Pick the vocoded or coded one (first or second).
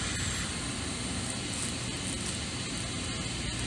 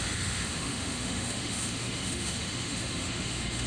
second